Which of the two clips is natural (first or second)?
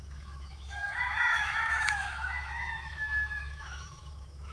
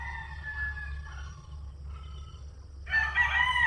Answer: second